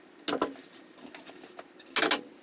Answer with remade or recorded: recorded